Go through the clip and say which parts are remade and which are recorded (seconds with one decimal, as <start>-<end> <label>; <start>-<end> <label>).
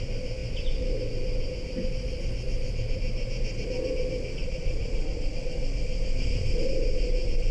0.0-4.4 recorded; 4.4-5.6 remade; 5.6-6.2 recorded; 6.2-6.7 remade; 6.7-7.5 recorded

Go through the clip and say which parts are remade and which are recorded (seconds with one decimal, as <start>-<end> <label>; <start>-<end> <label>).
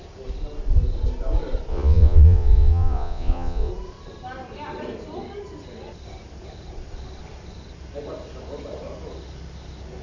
0.0-1.7 recorded; 1.7-3.7 remade; 3.7-10.0 recorded